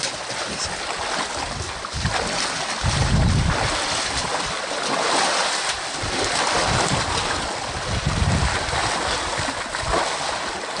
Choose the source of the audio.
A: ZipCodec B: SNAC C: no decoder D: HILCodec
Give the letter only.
C